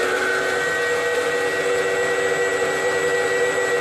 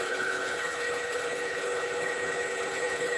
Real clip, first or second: first